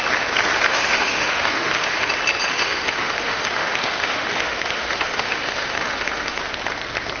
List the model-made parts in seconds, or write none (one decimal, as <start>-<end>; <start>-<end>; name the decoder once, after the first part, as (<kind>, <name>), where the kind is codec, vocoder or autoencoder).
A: 0.7-2.1 (autoencoder, DAC-VAE); 2.5-6.4